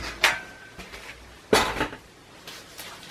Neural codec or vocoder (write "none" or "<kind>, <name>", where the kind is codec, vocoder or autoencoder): none